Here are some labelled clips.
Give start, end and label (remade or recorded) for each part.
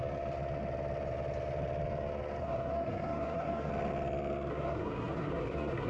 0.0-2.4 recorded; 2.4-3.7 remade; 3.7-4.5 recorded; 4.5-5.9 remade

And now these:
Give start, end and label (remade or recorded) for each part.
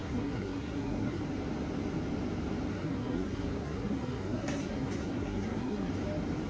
0.0-1.2 remade; 1.2-2.7 recorded; 2.7-5.9 remade; 5.9-6.5 recorded